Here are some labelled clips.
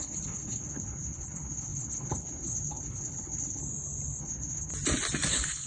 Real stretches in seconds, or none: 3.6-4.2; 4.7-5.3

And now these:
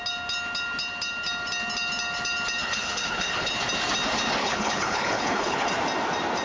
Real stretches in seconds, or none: 0.0-2.6; 3.5-4.4; 5.7-6.4

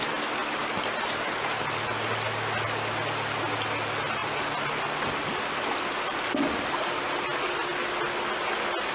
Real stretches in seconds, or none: 0.0-8.9

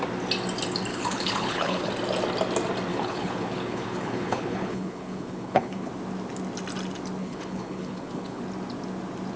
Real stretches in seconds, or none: 0.0-0.9; 1.9-2.9; 5.9-7.2; 8.4-9.4

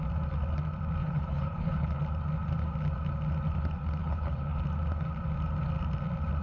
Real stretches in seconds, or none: 0.0-1.0; 2.0-4.0; 4.6-6.4

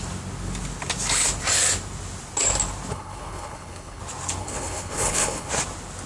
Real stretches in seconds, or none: 0.0-2.9; 4.0-4.4; 5.5-6.1

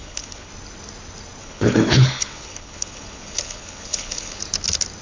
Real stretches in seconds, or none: 0.5-1.4; 4.4-5.0